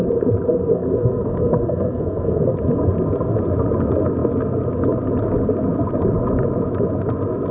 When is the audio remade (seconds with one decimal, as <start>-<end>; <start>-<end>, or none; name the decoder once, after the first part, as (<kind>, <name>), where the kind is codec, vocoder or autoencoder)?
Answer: 0.7-2.4 (codec, SNAC)